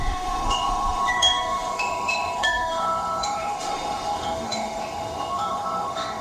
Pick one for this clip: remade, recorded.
remade